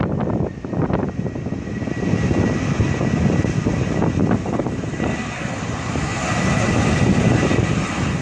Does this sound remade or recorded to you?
remade